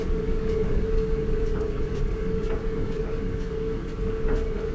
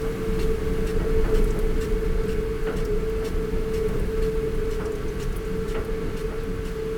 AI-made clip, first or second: first